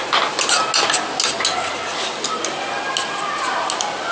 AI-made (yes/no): no